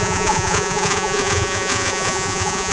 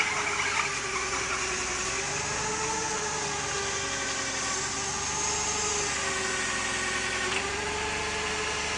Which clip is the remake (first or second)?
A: first